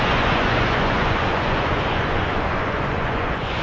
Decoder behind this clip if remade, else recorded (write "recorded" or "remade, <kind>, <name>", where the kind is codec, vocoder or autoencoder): remade, vocoder, Vocos